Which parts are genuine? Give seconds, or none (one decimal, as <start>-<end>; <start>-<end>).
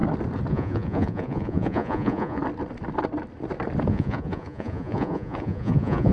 0.0-0.5; 2.4-3.9